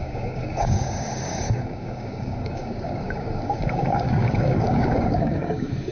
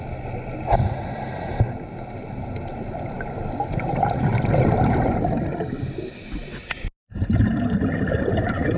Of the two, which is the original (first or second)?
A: second